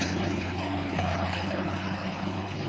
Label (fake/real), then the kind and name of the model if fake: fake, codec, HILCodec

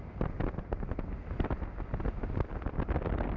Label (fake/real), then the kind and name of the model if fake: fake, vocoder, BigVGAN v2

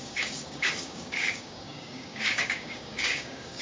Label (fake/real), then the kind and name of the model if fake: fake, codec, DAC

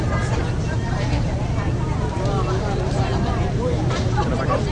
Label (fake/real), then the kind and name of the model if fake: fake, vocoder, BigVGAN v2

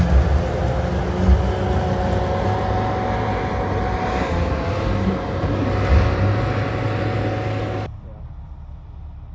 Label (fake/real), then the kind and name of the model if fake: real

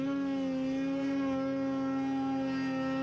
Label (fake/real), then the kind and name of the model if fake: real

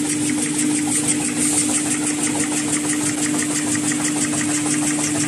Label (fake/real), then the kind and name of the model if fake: real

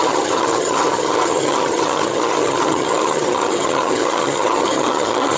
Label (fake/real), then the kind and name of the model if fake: fake, vocoder, HiFi-GAN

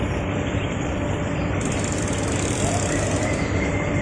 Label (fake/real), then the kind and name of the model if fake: real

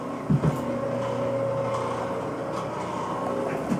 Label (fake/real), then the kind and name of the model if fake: real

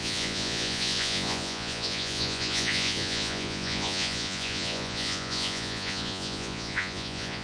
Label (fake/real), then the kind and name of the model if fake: fake, vocoder, Vocos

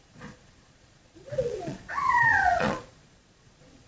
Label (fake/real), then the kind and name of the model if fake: fake, vocoder, Vocos